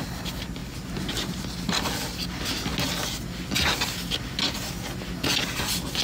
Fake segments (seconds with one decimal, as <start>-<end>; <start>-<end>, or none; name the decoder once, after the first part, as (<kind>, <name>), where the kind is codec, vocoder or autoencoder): none